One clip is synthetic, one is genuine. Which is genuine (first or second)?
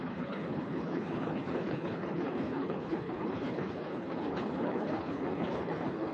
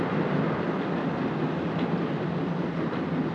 second